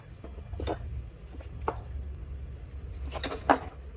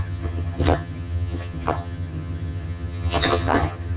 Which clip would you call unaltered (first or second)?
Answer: first